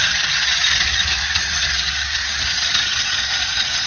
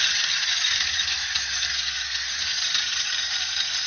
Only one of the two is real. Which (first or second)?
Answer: second